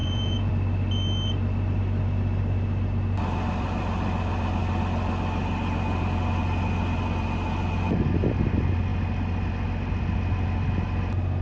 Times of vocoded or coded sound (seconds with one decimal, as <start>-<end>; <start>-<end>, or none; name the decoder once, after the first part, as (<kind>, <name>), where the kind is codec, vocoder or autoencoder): 0.0-0.5 (vocoder, Vocos)